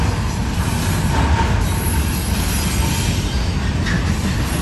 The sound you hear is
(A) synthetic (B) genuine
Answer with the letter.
B